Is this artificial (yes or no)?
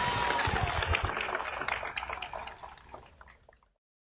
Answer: no